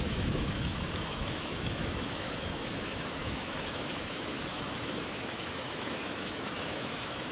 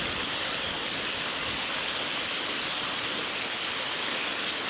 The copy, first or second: first